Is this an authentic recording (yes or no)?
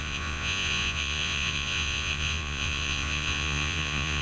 no